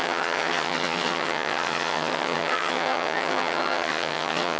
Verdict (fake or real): fake